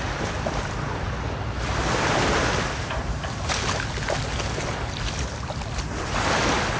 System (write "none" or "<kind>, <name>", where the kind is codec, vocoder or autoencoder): none